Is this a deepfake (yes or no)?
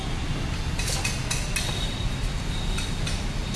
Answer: no